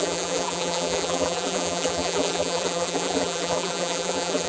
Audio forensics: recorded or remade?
remade